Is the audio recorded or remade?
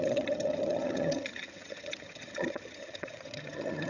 remade